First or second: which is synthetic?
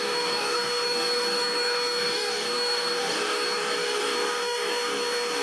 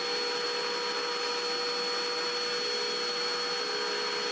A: first